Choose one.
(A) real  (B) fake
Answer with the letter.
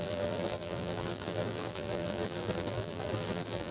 B